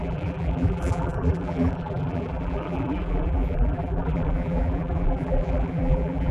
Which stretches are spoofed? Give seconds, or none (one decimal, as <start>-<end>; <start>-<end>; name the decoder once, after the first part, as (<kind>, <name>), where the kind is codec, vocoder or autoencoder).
0.0-6.3 (vocoder, BigVGAN v2)